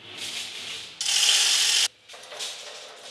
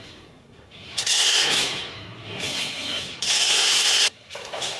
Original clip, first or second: first